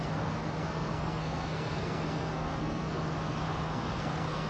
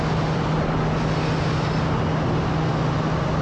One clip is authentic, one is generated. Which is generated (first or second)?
first